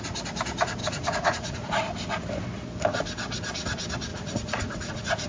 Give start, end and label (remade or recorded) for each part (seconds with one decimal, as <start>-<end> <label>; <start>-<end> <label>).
0.0-0.8 recorded; 0.8-1.8 remade; 1.8-4.1 recorded; 4.1-5.3 remade